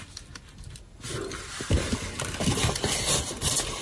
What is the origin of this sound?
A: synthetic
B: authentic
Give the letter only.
B